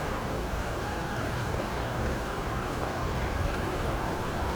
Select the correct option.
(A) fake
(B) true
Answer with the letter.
A